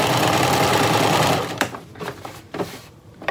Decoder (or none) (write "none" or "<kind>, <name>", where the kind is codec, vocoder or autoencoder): vocoder, BigVGAN v2